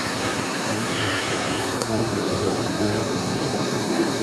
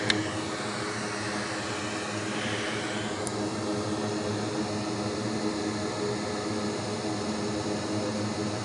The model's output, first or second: first